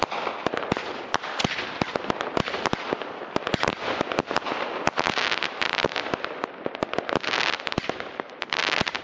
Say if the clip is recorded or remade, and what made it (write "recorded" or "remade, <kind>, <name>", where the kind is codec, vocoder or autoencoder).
recorded